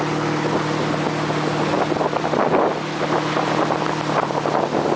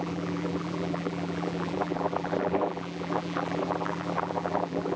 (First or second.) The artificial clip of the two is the second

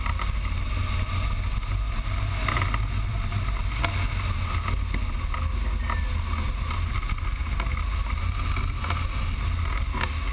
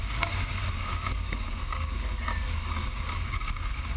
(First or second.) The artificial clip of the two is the second